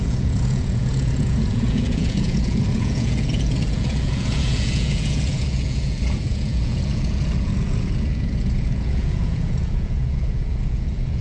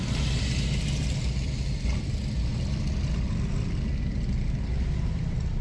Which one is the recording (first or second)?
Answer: second